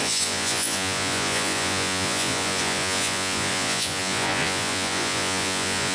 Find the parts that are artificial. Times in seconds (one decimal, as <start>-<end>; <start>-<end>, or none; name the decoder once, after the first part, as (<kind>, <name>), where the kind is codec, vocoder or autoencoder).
0.0-5.9 (vocoder, Vocos)